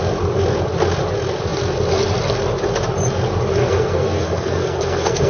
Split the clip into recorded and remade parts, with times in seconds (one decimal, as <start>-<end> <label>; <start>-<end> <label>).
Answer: 0.0-3.6 recorded; 3.6-5.3 remade